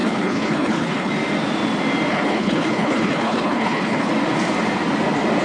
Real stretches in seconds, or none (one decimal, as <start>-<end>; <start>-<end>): 1.1-2.1; 4.1-5.4